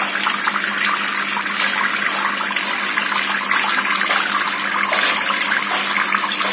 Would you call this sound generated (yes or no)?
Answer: no